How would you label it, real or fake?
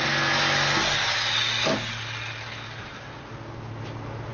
real